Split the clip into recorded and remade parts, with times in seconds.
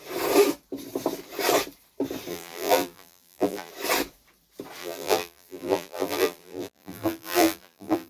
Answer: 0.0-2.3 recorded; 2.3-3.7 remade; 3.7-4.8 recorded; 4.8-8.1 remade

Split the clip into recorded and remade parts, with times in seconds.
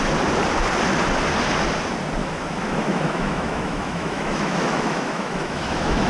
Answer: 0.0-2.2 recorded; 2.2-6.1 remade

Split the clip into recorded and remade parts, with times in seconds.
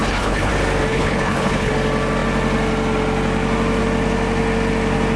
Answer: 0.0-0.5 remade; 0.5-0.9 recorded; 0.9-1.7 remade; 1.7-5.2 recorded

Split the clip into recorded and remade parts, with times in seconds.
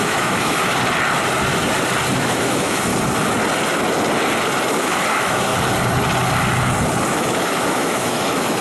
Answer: 0.0-0.7 remade; 0.7-2.2 recorded; 2.2-2.9 remade; 2.9-5.1 recorded; 5.1-5.5 remade; 5.5-7.1 recorded; 7.1-8.6 remade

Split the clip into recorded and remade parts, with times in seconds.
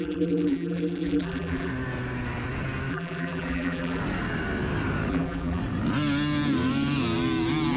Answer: 0.0-1.7 remade; 1.7-2.9 recorded; 2.9-4.0 remade; 4.0-5.1 recorded; 5.1-5.6 remade; 5.6-7.8 recorded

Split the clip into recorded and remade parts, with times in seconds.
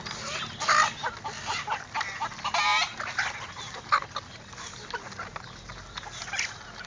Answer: 0.0-6.9 recorded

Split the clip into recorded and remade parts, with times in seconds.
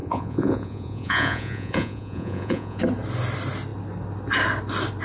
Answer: 0.0-2.8 remade; 2.8-5.0 recorded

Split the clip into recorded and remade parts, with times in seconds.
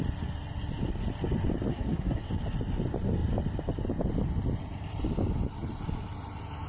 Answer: 0.0-1.7 recorded; 1.7-2.3 remade; 2.3-6.7 recorded